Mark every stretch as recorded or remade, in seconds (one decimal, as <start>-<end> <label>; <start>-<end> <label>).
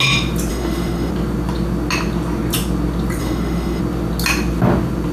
0.0-0.5 recorded; 0.5-1.1 remade; 1.1-3.2 recorded; 3.2-3.8 remade; 3.8-5.1 recorded